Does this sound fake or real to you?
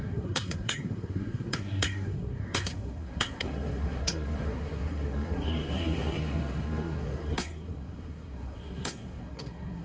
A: fake